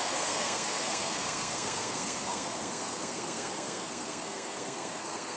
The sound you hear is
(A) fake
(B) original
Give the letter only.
A